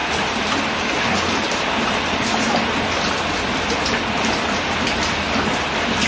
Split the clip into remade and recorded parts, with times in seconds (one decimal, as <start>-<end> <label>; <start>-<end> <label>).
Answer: 0.0-6.1 recorded